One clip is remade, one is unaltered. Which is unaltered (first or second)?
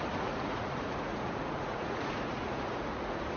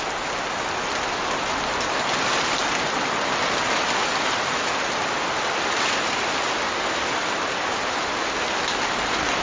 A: second